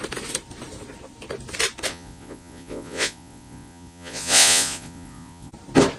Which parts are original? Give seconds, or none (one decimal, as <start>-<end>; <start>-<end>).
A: 0.0-1.9; 5.5-6.0